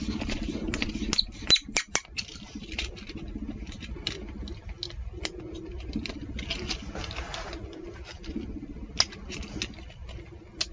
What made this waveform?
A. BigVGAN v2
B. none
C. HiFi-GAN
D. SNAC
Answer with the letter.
B